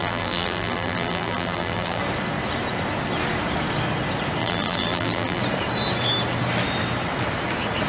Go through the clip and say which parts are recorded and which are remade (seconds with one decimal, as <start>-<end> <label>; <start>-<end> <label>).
0.0-2.0 remade; 2.0-4.4 recorded; 4.4-5.4 remade; 5.4-7.9 recorded